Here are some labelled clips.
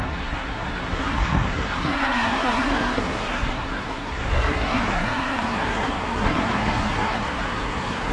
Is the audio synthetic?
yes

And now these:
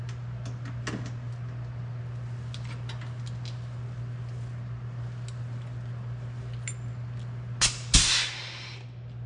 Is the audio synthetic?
no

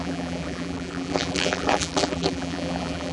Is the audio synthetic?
yes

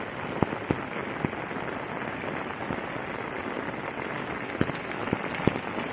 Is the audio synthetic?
no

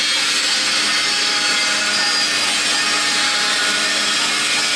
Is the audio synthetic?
no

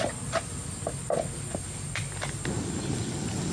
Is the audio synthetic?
no